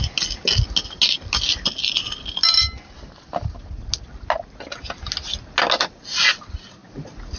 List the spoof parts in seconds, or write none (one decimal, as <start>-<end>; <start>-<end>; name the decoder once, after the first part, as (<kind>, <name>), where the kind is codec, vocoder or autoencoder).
none